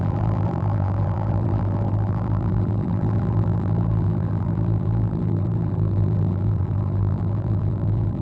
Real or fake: fake